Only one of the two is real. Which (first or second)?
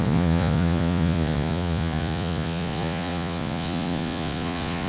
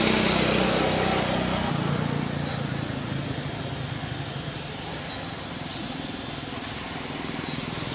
second